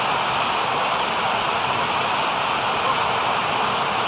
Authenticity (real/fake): real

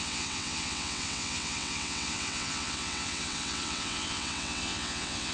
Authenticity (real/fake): fake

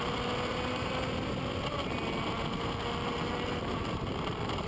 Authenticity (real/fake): real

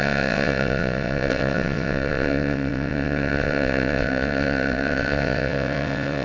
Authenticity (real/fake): fake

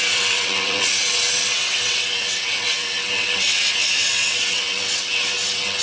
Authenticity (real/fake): fake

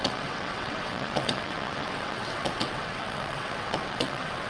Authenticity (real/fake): fake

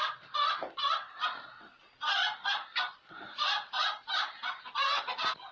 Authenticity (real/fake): real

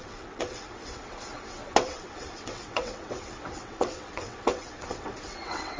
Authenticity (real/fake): fake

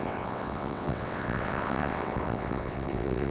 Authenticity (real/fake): fake